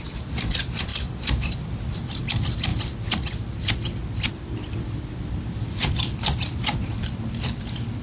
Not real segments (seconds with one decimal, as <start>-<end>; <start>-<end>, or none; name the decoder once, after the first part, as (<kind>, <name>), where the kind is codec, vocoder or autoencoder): 0.0-0.9 (vocoder, BigVGAN v2); 1.9-8.0